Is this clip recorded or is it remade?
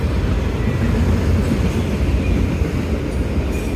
recorded